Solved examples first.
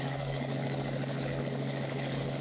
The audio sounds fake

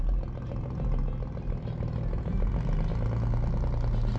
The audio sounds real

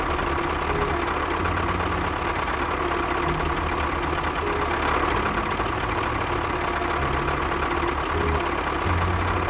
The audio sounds real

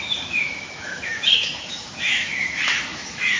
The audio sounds fake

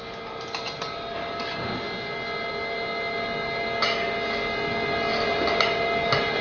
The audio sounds real